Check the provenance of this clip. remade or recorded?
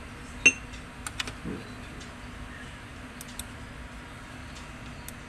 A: recorded